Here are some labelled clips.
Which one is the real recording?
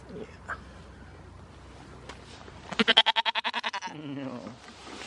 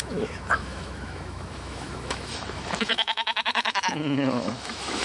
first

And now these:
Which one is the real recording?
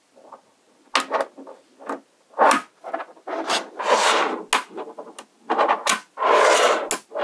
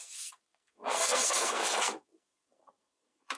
first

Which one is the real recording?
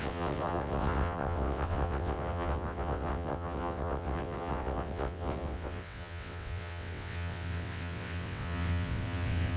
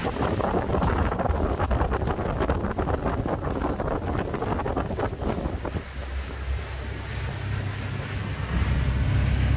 second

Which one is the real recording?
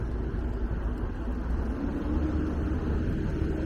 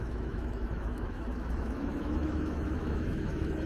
first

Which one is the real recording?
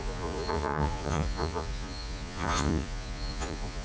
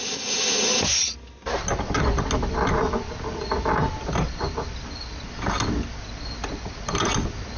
second